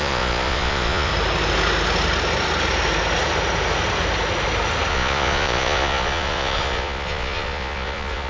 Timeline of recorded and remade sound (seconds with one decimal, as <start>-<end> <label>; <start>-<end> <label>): 0.0-1.1 remade; 1.1-4.9 recorded; 4.9-8.3 remade